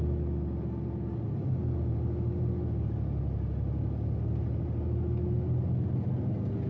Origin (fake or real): real